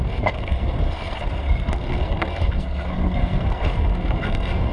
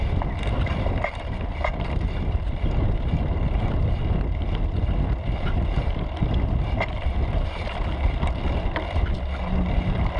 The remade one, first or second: first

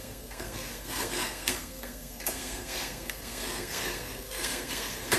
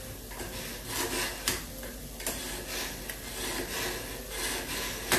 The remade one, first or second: first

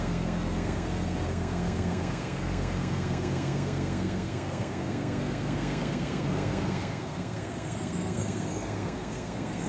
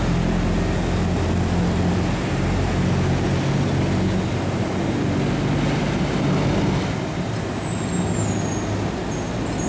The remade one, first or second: first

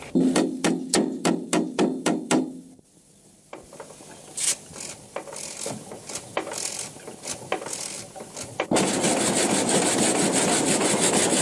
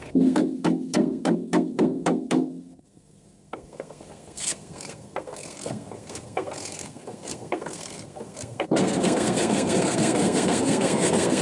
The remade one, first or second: second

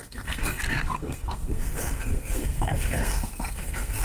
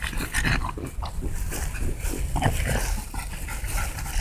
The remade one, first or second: first